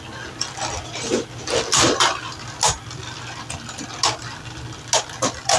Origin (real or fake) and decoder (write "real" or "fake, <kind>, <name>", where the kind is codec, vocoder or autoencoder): real